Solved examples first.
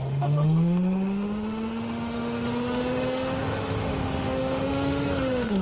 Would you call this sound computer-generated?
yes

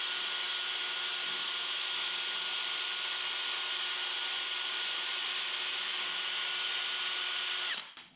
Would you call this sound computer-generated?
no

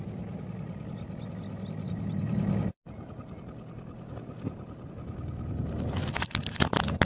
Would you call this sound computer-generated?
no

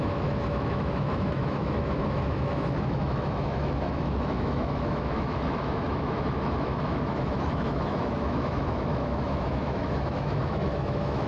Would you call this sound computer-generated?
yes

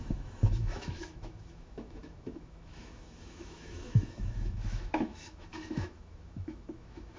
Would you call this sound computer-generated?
yes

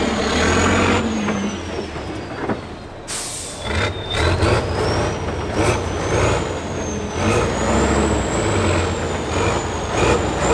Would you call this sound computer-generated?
no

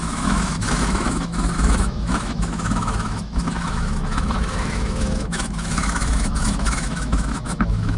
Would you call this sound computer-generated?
yes